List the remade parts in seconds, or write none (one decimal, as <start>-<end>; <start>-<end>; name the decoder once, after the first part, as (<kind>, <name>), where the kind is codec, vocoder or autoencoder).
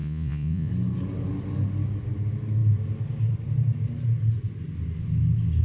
0.0-0.7 (vocoder, Vocos)